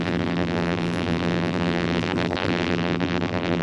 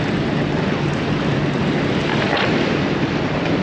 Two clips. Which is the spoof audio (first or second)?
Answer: first